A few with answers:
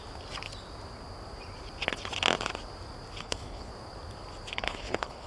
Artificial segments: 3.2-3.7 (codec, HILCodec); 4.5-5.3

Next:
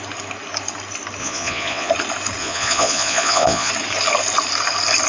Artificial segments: 1.2-1.9 (vocoder, Vocos); 2.4-3.7

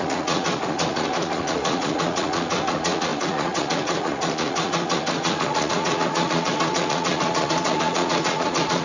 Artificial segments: 0.0-8.8 (vocoder, Vocos)

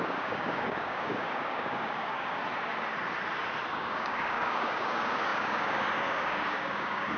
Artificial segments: 0.0-2.4 (codec, DAC); 3.7-7.2

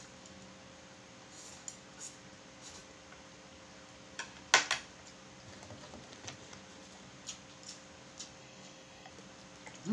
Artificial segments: 8.4-9.1 (codec, DAC)

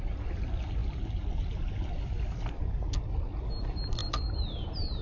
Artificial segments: none

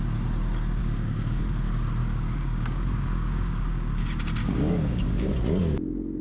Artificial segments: 0.8-1.4 (codec, DAC); 2.0-4.0; 4.4-5.3

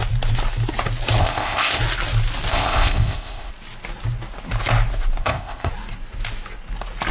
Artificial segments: 1.2-1.8 (codec, ZipCodec); 2.5-3.5; 5.2-5.7